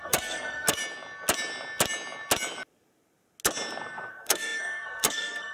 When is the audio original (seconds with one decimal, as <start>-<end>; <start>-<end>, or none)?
0.8-4.1